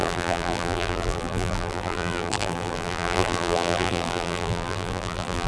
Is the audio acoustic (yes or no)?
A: no